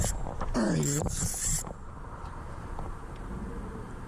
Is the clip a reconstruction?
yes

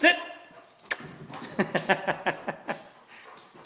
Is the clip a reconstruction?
no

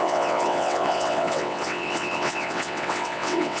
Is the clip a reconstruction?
yes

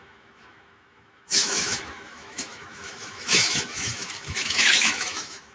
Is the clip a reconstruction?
yes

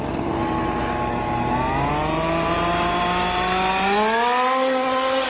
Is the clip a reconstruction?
no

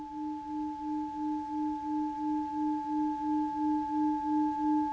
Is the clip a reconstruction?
no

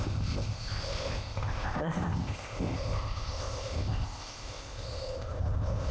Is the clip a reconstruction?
yes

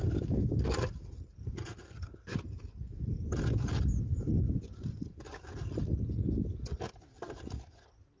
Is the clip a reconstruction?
no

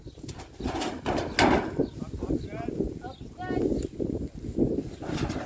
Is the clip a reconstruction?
no